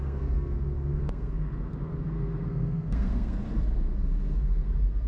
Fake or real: fake